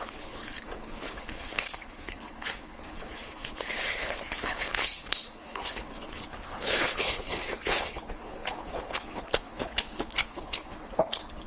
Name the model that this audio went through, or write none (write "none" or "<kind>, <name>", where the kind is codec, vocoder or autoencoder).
codec, HILCodec